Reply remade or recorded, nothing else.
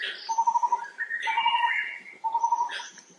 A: recorded